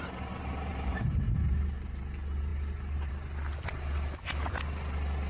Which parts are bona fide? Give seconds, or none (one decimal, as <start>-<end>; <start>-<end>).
0.0-0.7; 2.0-2.5; 3.1-5.3